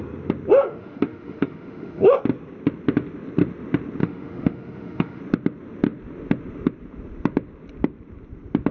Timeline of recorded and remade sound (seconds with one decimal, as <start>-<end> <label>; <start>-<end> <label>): 0.0-0.5 recorded; 0.5-2.2 remade; 2.2-4.0 recorded; 4.0-5.2 remade; 5.2-8.7 recorded